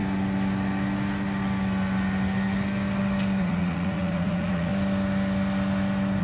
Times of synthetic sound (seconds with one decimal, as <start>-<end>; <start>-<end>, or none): 3.4-4.7